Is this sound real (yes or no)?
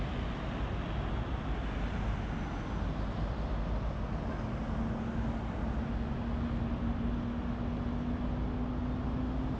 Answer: yes